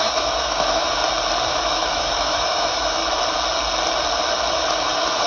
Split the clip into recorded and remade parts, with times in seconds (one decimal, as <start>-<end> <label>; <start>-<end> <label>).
0.0-1.0 remade; 1.0-1.5 recorded; 1.5-3.0 remade; 3.0-4.5 recorded; 4.5-5.3 remade